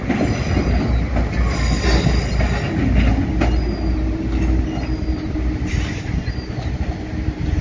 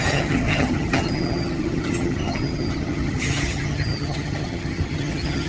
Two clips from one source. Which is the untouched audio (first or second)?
first